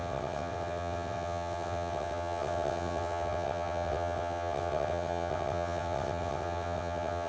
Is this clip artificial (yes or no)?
yes